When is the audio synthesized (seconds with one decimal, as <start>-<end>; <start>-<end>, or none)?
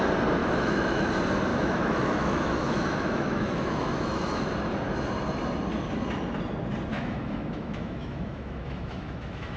0.4-1.1; 1.5-4.4; 6.9-9.6